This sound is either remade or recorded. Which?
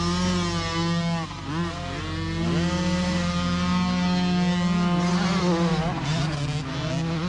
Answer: recorded